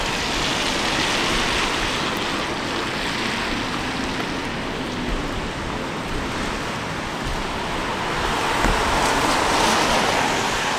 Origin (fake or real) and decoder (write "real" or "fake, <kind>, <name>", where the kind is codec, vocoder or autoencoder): real